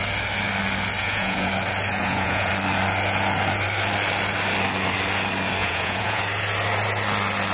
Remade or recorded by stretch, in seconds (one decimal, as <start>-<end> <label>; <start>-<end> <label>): 0.0-1.0 recorded; 1.0-1.5 remade; 1.5-2.0 recorded; 2.0-2.5 remade; 2.5-5.6 recorded; 5.6-6.2 remade; 6.2-7.5 recorded